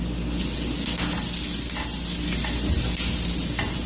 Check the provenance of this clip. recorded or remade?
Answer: recorded